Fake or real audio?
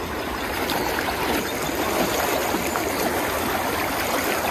real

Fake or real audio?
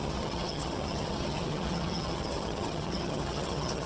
fake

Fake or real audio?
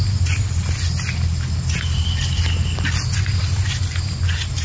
real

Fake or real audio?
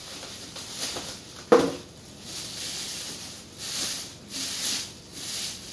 real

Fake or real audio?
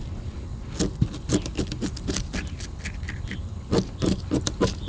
real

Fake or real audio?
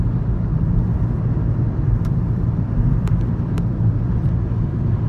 fake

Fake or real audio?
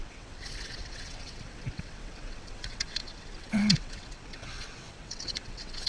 fake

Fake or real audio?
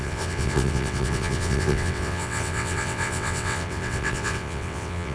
fake